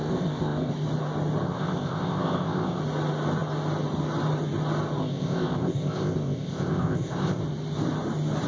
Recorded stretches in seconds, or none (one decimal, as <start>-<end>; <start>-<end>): 0.7-1.4; 2.8-5.0; 7.4-8.5